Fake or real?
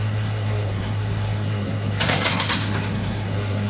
fake